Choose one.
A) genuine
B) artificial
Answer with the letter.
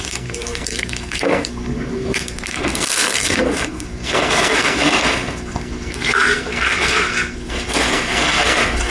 B